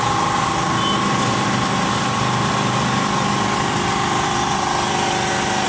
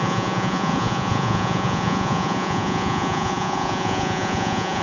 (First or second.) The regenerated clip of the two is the second